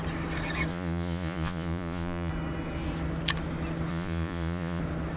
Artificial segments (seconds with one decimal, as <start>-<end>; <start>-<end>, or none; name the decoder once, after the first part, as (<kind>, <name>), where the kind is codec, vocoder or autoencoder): 0.7-2.3 (vocoder, Vocos); 3.9-4.8